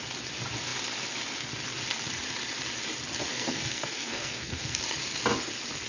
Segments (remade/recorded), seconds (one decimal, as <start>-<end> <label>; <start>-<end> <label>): 0.0-3.3 recorded; 3.3-4.8 remade; 4.8-5.9 recorded